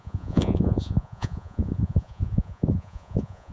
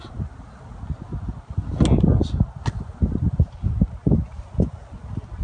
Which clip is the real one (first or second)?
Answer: second